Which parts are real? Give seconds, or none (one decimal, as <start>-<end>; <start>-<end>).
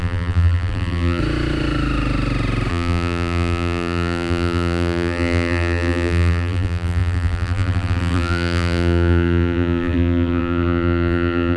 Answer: 1.2-2.7